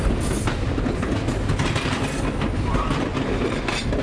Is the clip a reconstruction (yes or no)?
no